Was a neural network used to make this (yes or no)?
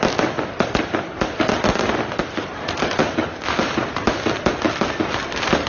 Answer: yes